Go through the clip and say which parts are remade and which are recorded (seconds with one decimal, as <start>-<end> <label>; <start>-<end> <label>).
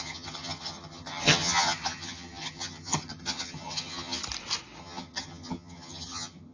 0.0-4.2 remade; 4.2-4.8 recorded; 4.8-6.5 remade